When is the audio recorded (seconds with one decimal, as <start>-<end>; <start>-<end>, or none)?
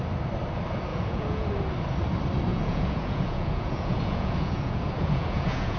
0.0-0.9; 1.5-2.5